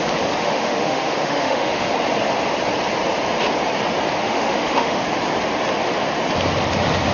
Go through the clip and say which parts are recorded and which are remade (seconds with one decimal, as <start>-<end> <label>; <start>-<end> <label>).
0.0-0.4 recorded; 0.4-1.8 remade; 1.8-4.2 recorded; 4.2-5.0 remade; 5.0-7.1 recorded